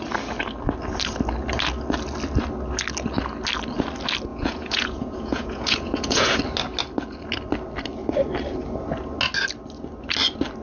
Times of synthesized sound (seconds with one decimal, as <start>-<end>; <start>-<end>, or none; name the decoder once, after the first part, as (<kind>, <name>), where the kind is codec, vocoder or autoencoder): 4.3-6.4 (vocoder, Vocos)

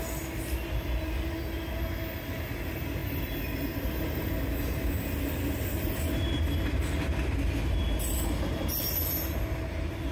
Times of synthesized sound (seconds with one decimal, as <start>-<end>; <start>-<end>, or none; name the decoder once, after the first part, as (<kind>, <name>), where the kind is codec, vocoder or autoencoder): none

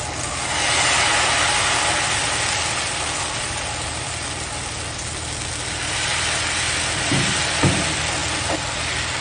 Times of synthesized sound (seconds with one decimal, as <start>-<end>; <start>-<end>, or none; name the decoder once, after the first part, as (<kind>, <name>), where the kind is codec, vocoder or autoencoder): none

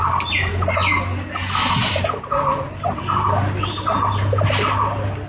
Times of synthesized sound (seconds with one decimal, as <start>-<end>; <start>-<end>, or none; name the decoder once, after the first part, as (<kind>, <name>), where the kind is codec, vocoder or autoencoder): none

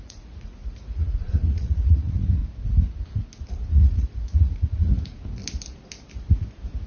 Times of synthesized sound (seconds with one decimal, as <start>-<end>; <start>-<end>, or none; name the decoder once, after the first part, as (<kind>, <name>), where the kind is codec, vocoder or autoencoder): 0.0-2.4 (vocoder, Vocos); 3.7-5.4

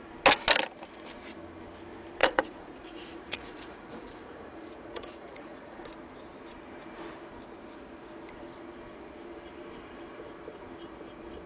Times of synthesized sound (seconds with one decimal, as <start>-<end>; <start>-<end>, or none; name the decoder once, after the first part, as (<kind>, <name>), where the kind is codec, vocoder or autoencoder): 2.2-5.8 (vocoder, Vocos)